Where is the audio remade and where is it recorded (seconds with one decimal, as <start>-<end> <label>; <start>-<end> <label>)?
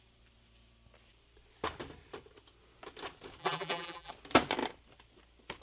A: 0.0-3.4 recorded; 3.4-4.1 remade; 4.1-5.6 recorded